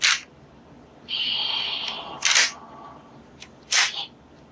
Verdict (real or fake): real